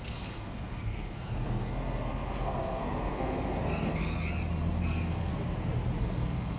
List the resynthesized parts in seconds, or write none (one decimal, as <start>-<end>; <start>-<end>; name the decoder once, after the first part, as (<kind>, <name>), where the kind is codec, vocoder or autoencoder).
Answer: 0.0-4.1 (codec, SNAC); 4.8-5.3; 6.0-6.6